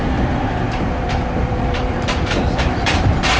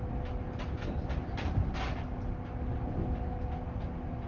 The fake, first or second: first